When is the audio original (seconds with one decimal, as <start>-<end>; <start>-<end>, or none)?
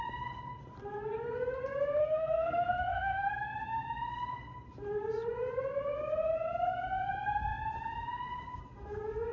0.0-2.0; 3.3-9.3